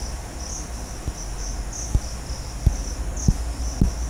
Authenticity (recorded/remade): recorded